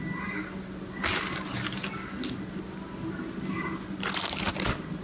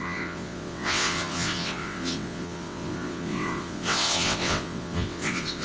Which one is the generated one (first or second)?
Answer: second